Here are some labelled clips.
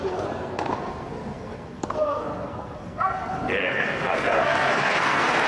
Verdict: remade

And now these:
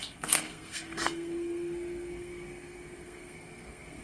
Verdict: remade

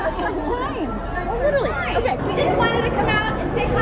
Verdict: recorded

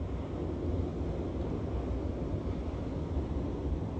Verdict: recorded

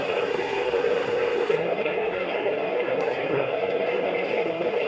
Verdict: remade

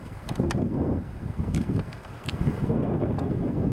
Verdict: remade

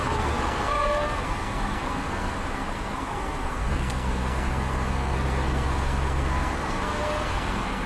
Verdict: remade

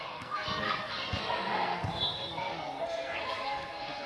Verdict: remade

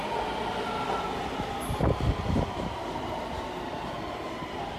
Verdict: recorded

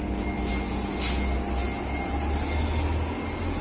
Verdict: recorded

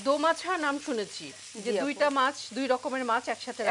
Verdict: recorded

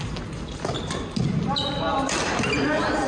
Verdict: recorded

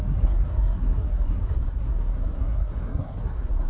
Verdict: remade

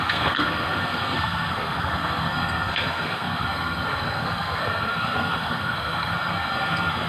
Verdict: remade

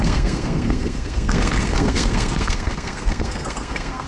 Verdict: remade